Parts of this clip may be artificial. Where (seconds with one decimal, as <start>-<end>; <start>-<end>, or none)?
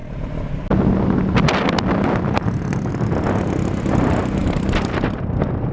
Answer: none